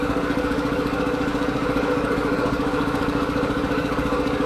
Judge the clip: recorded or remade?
remade